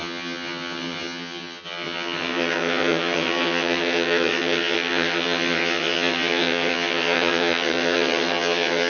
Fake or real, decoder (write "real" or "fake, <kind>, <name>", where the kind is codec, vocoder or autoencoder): fake, vocoder, HiFi-GAN